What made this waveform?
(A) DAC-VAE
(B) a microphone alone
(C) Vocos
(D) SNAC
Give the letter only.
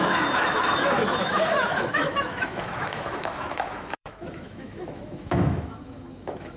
A